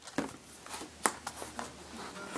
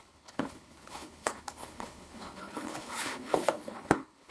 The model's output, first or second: second